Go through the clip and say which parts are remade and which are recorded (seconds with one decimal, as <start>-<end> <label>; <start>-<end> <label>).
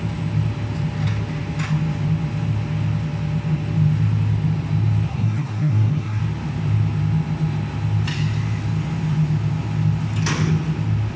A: 0.0-5.1 recorded; 5.1-6.2 remade; 6.2-11.2 recorded